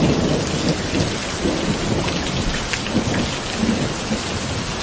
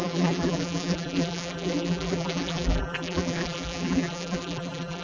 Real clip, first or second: first